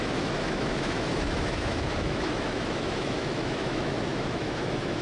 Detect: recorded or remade remade